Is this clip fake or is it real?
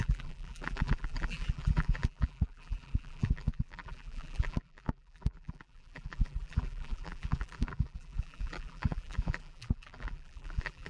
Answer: fake